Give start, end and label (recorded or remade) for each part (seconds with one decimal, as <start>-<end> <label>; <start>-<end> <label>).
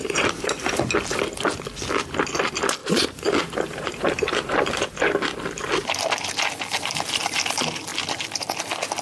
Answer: 0.0-0.7 remade; 0.7-2.8 recorded; 2.8-4.8 remade; 4.8-9.0 recorded